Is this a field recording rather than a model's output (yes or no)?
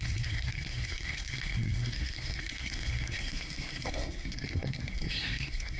no